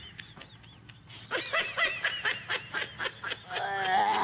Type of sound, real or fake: real